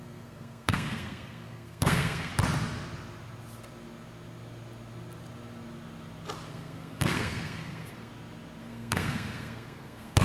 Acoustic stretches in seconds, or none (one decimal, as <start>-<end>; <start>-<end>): 2.3-6.5; 8.1-8.6